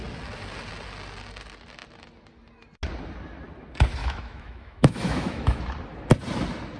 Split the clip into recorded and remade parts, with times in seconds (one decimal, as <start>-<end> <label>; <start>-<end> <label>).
0.0-4.0 recorded; 4.0-5.6 remade; 5.6-6.8 recorded